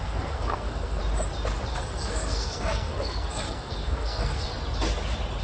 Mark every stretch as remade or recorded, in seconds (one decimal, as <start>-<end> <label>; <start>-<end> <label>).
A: 0.0-1.0 remade; 1.0-1.7 recorded; 1.7-4.5 remade; 4.5-5.4 recorded